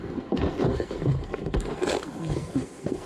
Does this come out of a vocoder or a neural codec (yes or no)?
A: yes